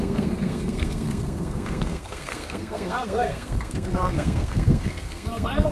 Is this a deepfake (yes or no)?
yes